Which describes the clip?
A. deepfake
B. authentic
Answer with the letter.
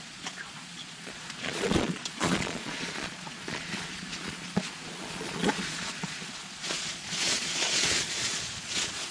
A